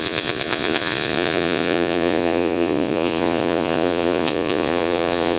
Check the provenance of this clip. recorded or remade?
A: remade